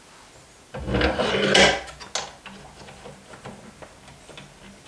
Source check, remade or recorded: recorded